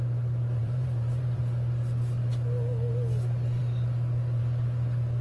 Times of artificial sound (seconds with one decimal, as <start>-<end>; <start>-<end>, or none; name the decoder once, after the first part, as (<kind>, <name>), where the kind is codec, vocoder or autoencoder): 0.6-1.4 (vocoder, BigVGAN v2)

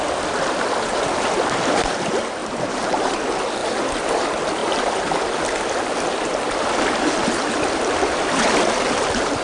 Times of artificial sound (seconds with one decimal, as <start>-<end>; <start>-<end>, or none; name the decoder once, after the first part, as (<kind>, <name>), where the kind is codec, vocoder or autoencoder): 2.4-3.1 (vocoder, BigVGAN v2); 4.6-5.3

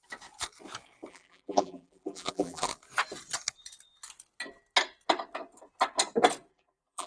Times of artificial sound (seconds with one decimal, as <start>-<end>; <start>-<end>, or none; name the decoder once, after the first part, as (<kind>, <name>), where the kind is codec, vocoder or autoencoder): 1.1-2.7 (vocoder, BigVGAN v2); 6.5-7.1